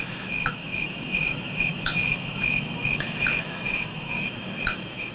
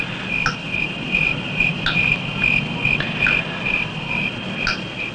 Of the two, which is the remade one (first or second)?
first